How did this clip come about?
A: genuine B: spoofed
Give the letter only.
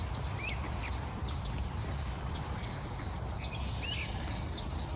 A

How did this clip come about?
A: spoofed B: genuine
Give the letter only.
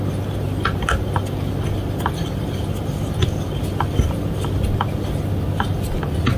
B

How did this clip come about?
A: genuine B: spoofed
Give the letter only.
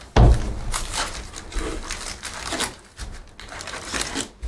A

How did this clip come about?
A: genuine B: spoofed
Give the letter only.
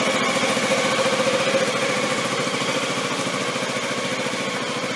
A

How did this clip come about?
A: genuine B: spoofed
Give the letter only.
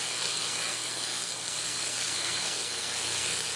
B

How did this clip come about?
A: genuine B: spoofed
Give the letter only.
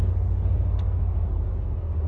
B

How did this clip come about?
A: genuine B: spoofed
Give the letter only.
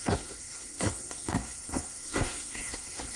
B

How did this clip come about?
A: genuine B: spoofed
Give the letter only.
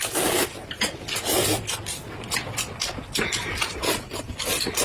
A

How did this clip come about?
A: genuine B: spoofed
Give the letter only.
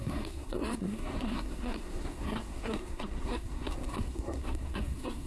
B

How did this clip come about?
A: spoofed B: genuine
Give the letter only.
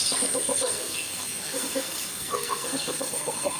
A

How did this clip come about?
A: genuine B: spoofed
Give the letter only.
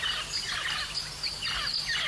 A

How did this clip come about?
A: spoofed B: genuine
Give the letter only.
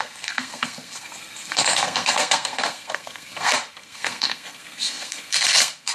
A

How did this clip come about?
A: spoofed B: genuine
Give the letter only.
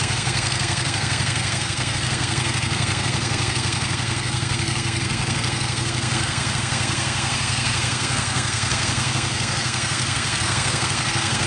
A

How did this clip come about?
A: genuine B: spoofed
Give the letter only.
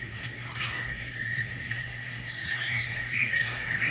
B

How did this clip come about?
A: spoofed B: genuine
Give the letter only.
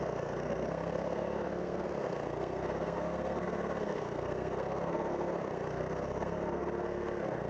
A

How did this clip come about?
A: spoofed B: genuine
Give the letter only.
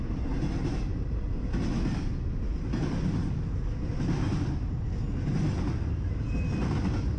B